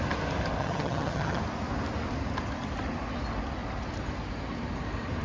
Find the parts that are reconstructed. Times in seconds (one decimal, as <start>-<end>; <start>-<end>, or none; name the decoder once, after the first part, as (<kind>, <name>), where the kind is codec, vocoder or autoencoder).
0.6-1.4 (vocoder, HiFi-GAN)